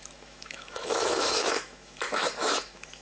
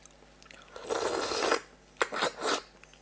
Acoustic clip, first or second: second